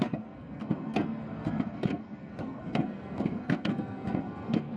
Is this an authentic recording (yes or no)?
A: no